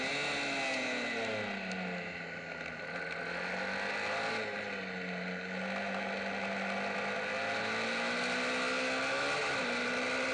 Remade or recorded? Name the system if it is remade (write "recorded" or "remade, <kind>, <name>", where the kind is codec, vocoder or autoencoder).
recorded